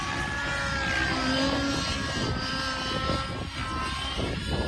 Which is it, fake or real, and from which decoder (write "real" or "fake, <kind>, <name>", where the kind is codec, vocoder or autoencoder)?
real